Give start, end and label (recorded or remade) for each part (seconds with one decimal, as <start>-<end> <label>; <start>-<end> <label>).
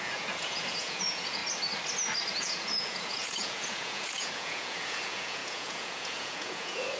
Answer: 0.0-1.4 remade; 1.4-2.4 recorded; 2.4-7.0 remade